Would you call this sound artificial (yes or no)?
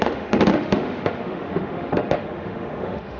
yes